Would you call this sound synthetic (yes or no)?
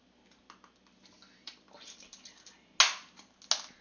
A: no